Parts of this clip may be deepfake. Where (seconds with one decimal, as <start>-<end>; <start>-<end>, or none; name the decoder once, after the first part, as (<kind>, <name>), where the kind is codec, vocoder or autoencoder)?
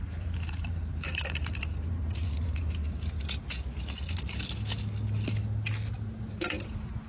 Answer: 0.0-2.8 (vocoder, BigVGAN v2); 5.9-7.1